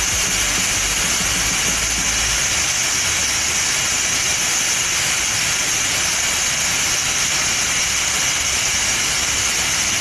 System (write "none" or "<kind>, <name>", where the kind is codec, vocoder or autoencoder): none